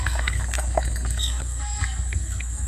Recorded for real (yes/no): no